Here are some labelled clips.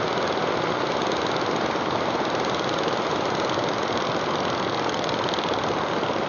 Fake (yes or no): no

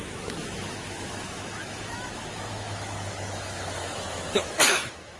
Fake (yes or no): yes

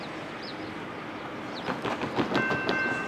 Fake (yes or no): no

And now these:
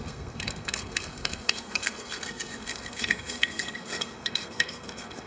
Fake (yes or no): yes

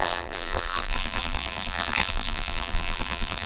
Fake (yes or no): yes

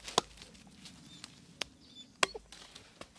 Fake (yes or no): no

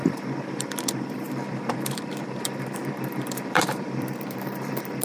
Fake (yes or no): yes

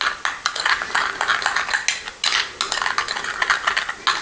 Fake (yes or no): no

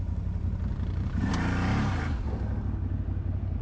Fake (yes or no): no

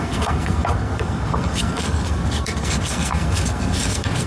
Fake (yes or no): yes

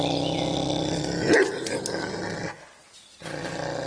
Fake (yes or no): no